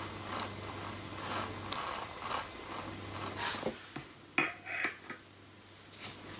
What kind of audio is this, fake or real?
real